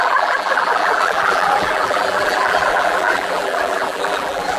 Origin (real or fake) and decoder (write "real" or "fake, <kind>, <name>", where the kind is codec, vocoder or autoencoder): fake, vocoder, BigVGAN v2